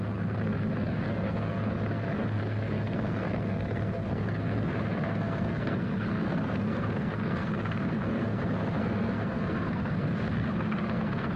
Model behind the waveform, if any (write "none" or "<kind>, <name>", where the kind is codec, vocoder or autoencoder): codec, SNAC